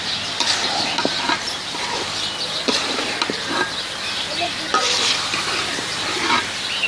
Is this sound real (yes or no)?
no